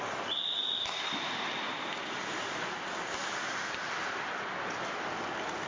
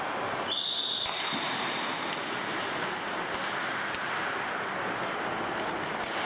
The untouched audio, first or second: second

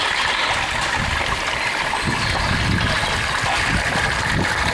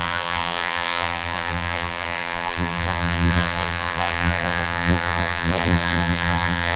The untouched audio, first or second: first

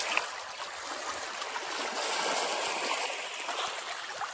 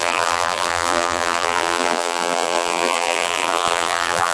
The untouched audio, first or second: first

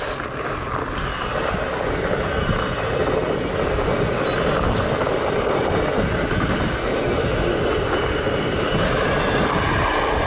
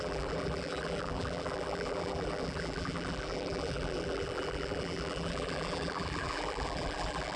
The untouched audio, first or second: first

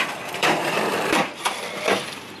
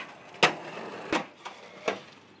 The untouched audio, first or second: second